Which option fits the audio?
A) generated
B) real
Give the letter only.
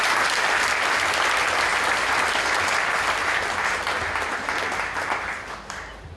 B